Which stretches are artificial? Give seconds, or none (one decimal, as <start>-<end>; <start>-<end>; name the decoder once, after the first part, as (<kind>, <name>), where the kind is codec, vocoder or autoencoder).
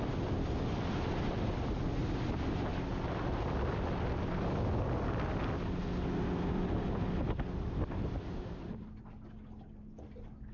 none